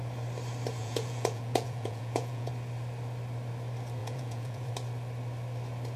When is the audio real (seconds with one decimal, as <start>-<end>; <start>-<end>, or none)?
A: 0.0-0.8; 2.5-4.0; 4.7-6.0